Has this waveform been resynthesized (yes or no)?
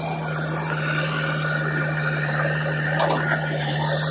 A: no